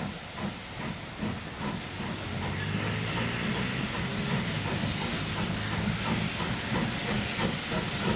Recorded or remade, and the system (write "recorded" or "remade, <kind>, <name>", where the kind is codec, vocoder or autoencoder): recorded